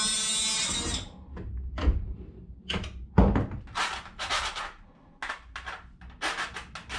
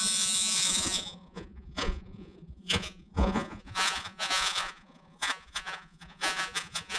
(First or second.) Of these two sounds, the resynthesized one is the second